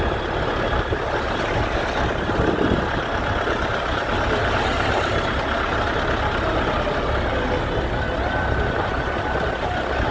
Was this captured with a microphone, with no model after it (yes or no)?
yes